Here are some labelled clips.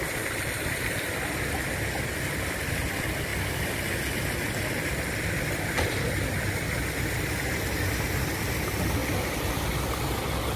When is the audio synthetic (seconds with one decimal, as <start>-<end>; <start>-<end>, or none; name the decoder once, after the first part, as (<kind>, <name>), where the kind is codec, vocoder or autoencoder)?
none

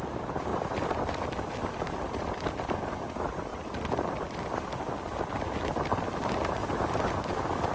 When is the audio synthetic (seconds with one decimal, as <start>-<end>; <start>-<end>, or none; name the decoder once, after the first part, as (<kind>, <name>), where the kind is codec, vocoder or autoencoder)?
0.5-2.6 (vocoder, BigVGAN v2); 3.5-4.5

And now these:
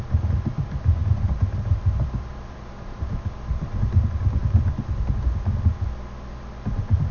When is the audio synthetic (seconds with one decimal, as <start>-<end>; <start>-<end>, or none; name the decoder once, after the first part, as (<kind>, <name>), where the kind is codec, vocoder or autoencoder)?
1.0-3.8 (vocoder, BigVGAN v2)

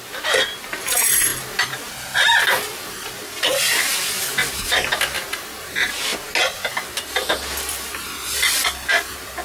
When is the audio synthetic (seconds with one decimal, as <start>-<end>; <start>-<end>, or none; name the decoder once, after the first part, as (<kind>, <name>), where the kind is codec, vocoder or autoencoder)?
none

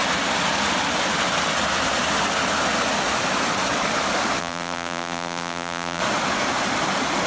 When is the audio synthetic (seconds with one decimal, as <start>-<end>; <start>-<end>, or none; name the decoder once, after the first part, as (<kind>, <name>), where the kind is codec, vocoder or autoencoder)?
4.4-6.0 (vocoder, BigVGAN v2)

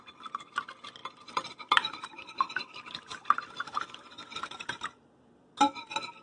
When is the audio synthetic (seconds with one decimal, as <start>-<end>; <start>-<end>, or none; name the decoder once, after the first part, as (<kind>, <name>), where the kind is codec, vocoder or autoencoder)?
1.0-4.7 (vocoder, BigVGAN v2)

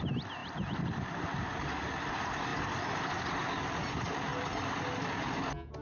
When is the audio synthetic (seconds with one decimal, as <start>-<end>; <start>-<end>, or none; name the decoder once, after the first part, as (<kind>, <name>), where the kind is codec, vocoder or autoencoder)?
0.4-2.1 (vocoder, BigVGAN v2)